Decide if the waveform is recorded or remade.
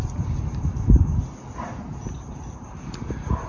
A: recorded